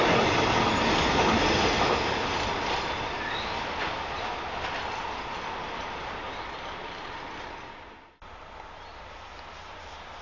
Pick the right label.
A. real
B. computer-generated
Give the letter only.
A